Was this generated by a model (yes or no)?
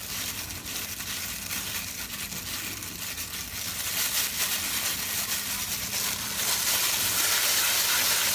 no